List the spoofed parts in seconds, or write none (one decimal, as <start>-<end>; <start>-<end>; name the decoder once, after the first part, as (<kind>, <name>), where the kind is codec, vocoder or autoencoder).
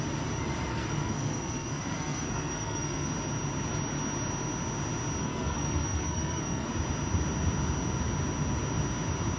0.7-3.1 (codec, SNAC); 5.2-6.7